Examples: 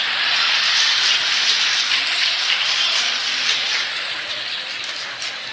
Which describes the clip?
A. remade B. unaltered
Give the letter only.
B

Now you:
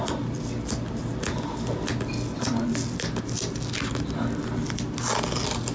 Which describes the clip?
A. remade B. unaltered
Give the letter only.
B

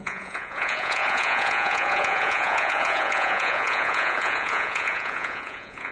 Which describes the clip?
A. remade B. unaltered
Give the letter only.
A